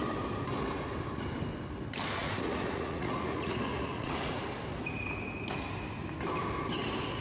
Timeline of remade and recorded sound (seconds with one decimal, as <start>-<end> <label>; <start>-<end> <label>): 0.0-2.2 recorded; 2.2-4.4 remade; 4.4-7.2 recorded